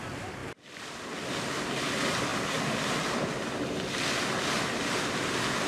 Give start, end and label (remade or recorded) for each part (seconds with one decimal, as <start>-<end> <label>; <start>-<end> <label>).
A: 0.0-5.7 recorded